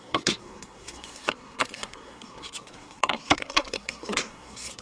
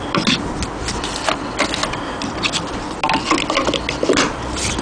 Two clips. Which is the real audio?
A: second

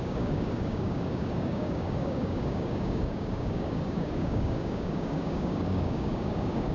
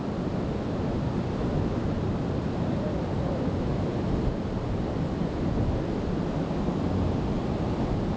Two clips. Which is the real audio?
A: second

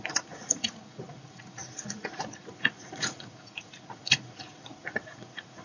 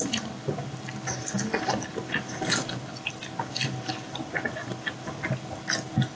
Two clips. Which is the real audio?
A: second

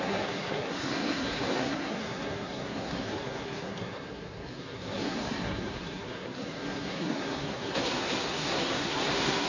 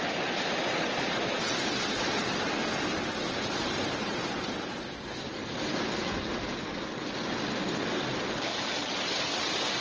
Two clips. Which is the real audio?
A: second